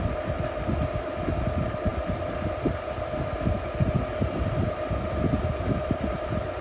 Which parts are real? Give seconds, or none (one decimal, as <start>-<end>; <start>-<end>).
0.0-6.6